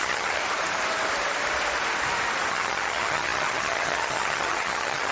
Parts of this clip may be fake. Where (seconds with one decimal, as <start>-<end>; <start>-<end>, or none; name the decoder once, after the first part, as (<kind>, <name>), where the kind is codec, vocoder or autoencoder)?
0.0-0.4 (vocoder, HiFi-GAN); 2.5-5.1